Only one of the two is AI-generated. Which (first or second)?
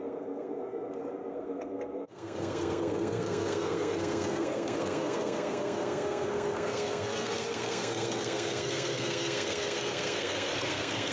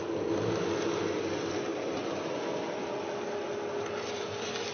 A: first